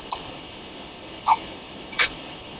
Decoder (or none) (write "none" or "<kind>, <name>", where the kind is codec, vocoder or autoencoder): codec, HILCodec